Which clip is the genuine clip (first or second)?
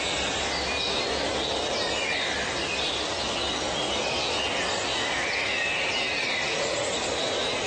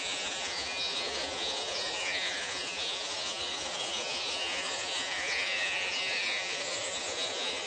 first